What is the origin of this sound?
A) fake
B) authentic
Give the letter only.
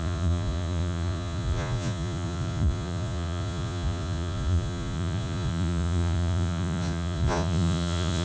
A